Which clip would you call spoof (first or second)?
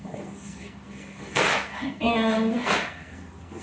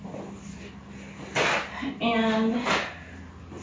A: first